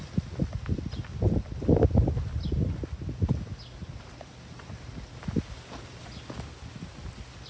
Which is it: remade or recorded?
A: recorded